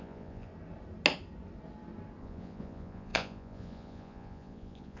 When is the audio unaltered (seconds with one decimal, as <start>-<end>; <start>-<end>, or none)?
0.5-2.2